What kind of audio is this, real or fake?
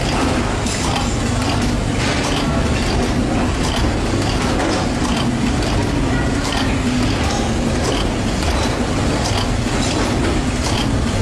real